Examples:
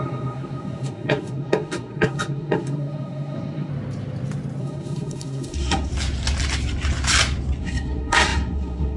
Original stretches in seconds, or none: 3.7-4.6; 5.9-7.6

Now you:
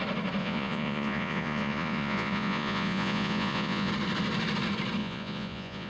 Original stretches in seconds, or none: 0.0-0.4; 3.9-5.0

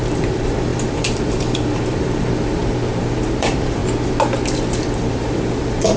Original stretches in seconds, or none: 2.6-3.4; 3.8-4.8

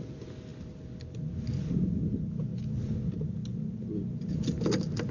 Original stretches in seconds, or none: 0.0-5.1

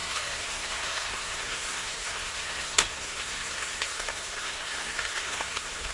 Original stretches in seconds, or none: none

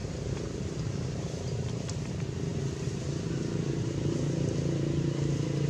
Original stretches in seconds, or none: 2.1-5.7

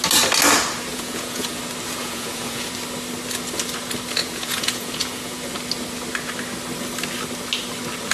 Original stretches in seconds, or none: 0.0-0.9; 1.6-2.0; 2.7-4.2; 5.4-8.1

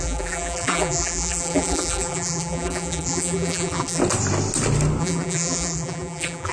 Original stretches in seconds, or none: 4.0-5.0